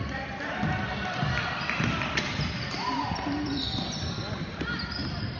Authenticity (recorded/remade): remade